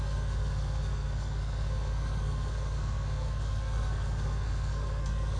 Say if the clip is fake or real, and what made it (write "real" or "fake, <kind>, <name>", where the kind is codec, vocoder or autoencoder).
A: fake, codec, SNAC